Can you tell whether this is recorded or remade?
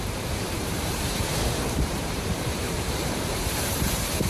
remade